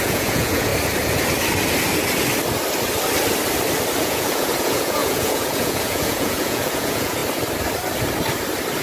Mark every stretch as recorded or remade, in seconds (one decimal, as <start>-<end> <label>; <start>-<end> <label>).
0.0-0.7 remade; 0.7-4.0 recorded; 4.0-7.2 remade; 7.2-8.8 recorded